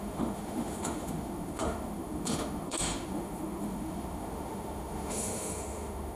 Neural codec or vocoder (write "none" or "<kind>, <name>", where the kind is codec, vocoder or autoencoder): autoencoder, DAC-VAE